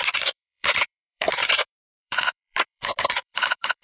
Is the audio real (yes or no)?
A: no